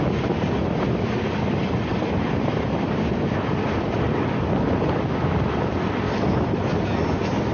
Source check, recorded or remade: recorded